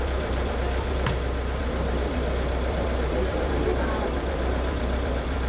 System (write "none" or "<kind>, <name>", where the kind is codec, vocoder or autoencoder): vocoder, BigVGAN v2